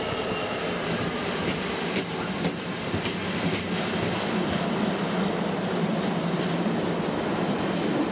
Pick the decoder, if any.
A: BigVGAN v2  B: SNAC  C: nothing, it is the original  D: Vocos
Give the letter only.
C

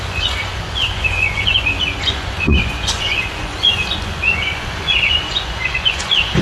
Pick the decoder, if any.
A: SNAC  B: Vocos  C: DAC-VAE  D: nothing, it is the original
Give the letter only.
B